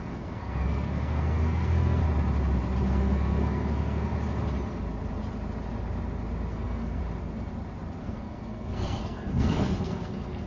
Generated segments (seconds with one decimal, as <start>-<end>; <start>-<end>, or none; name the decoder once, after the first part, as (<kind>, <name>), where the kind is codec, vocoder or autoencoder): 0.0-2.0 (codec, SNAC); 2.8-4.1; 6.5-7.0; 8.0-10.5